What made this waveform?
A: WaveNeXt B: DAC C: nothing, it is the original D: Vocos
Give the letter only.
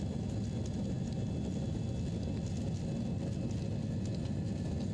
C